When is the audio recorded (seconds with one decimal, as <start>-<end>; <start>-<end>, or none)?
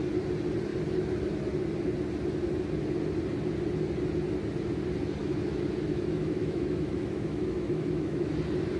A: 0.0-5.2; 8.3-8.8